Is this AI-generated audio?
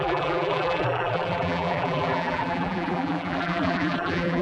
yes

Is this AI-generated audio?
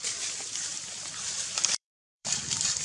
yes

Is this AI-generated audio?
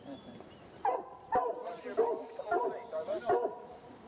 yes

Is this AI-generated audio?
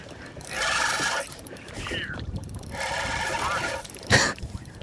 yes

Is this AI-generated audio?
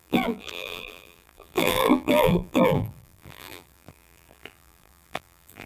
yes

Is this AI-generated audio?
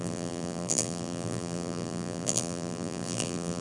yes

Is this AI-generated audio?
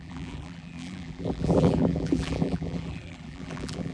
yes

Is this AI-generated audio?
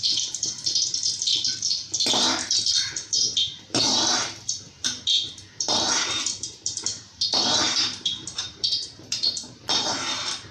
yes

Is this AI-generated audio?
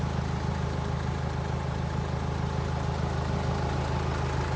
no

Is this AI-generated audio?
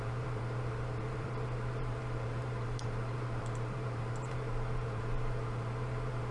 yes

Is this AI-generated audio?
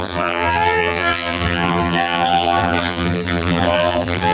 yes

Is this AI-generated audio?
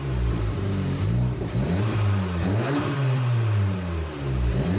yes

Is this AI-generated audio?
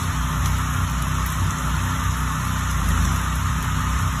no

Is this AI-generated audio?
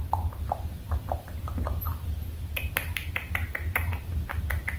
no